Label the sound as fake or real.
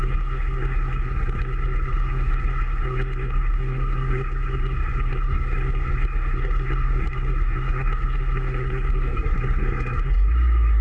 fake